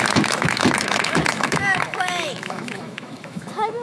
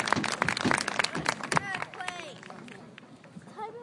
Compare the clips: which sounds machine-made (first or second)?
first